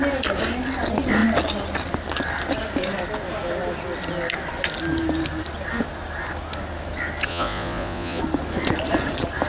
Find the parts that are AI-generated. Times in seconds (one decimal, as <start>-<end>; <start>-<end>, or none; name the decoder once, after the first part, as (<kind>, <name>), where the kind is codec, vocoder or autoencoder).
7.3-8.2 (vocoder, Vocos)